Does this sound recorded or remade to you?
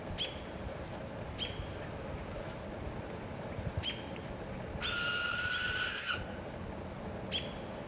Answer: recorded